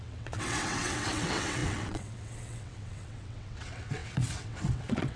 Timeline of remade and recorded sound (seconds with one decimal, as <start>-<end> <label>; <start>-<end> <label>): 0.0-5.2 remade